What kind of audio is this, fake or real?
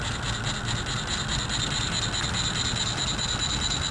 real